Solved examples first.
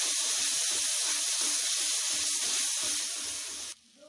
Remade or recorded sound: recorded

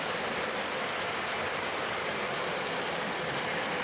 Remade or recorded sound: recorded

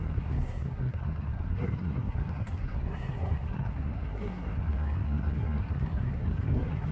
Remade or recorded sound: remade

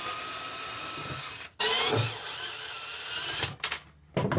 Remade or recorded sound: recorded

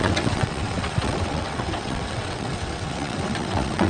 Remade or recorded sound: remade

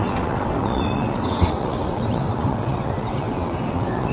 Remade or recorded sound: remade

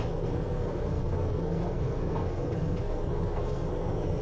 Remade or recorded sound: remade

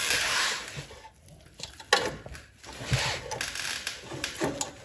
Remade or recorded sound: recorded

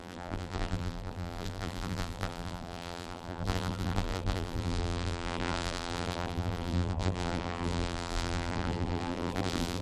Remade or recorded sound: remade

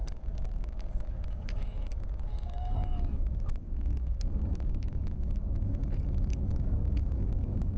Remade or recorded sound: remade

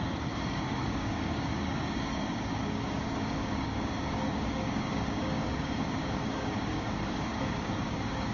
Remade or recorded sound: remade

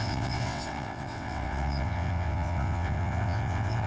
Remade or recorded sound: remade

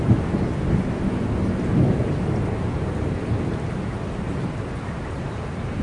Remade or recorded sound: recorded